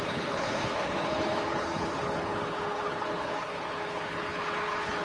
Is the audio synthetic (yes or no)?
yes